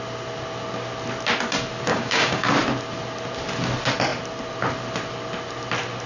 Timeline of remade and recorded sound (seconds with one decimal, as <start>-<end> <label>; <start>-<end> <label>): 0.0-1.9 recorded; 1.9-2.5 remade; 2.5-6.1 recorded